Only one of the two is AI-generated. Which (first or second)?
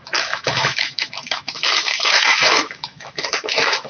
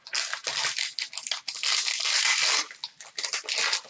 first